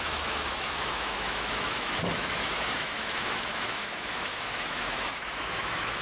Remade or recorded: remade